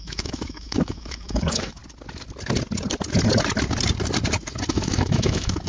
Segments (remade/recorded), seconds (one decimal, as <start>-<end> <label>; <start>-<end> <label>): 0.0-1.8 remade; 1.8-4.7 recorded; 4.7-5.7 remade